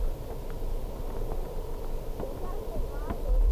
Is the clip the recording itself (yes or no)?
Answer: yes